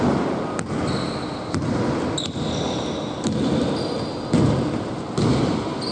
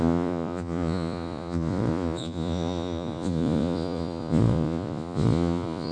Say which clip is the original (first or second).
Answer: first